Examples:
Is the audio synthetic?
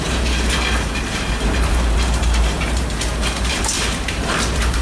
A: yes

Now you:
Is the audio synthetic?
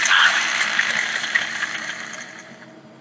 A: yes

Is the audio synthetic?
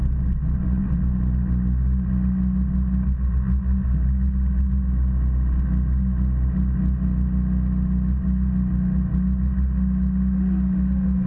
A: no